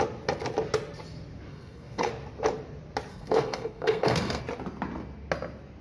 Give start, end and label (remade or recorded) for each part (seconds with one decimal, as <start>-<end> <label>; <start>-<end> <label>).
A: 0.0-1.5 recorded; 1.5-2.1 remade; 2.1-3.1 recorded; 3.1-4.4 remade; 4.4-5.8 recorded